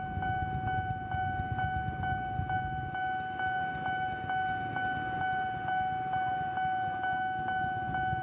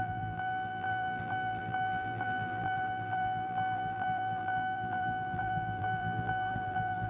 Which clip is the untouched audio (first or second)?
first